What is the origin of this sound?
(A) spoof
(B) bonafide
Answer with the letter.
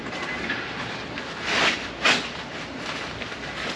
B